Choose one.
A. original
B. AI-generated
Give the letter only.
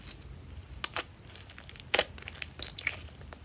A